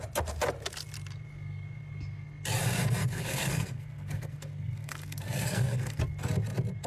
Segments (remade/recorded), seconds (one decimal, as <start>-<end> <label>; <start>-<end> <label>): 0.0-3.0 recorded; 3.0-6.0 remade; 6.0-6.9 recorded